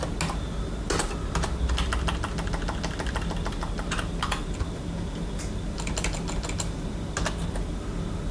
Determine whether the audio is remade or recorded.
recorded